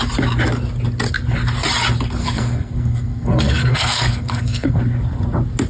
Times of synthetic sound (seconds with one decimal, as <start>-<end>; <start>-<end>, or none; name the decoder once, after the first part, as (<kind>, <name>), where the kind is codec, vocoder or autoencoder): 2.2-4.8 (codec, SNAC)